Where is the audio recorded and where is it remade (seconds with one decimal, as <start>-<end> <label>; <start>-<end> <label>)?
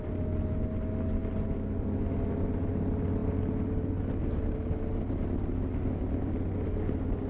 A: 0.0-7.3 recorded